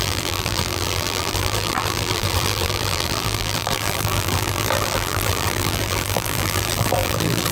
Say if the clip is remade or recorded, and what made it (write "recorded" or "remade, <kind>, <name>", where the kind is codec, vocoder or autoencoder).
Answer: remade, vocoder, BigVGAN v2